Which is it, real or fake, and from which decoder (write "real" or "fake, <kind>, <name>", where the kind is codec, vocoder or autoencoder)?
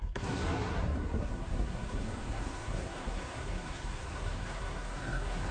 fake, codec, SNAC